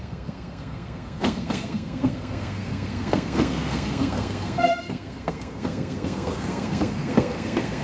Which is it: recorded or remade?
remade